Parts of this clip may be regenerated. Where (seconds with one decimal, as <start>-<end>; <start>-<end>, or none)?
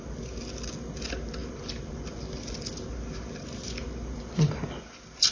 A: none